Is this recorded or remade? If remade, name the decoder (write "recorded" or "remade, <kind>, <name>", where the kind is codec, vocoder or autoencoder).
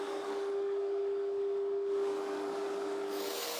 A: remade, codec, DAC